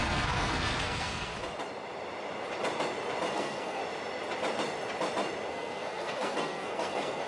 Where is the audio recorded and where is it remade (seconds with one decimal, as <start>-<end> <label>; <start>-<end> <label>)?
0.0-1.3 remade; 1.3-3.3 recorded; 3.3-3.8 remade; 3.8-5.5 recorded; 5.5-7.3 remade